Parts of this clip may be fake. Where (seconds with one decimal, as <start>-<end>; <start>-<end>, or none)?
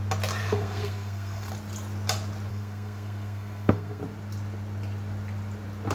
0.4-1.5; 2.5-4.0